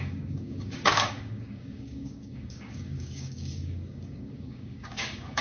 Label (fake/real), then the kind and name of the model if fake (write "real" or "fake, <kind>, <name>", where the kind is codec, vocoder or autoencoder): fake, codec, DAC